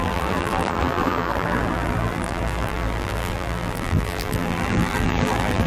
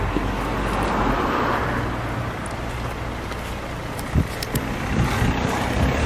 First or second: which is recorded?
second